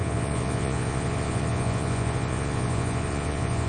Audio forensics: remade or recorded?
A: remade